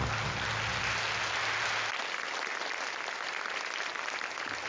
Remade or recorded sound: recorded